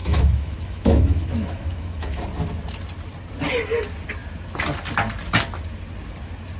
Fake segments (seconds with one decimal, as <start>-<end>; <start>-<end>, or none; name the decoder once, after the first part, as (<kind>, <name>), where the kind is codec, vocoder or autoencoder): 0.0-2.2 (autoencoder, DAC-VAE)